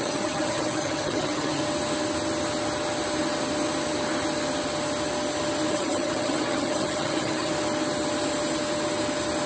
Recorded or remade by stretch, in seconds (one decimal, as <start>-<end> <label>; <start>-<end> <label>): 0.0-1.6 remade; 1.6-5.7 recorded; 5.7-7.5 remade; 7.5-9.5 recorded